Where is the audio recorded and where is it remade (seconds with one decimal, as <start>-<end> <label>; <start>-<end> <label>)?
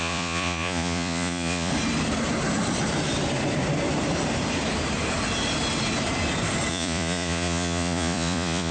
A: 0.0-1.7 remade; 1.7-6.7 recorded; 6.7-8.7 remade